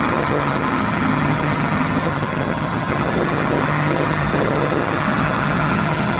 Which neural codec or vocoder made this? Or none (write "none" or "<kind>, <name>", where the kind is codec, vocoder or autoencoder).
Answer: vocoder, HiFi-GAN